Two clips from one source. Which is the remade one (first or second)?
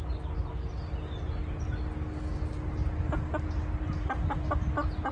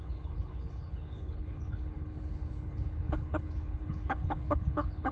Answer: second